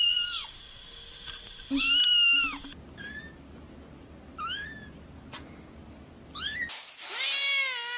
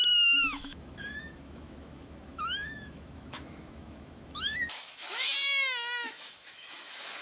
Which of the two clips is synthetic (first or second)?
second